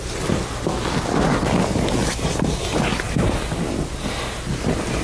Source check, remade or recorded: recorded